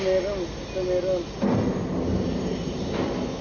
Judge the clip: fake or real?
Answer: real